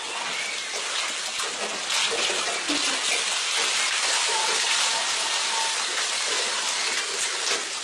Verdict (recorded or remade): recorded